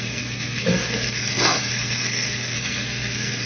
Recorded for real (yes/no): no